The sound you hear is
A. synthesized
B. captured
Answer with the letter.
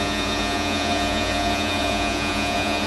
A